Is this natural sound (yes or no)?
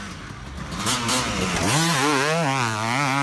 yes